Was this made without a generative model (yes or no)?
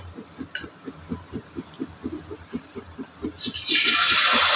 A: yes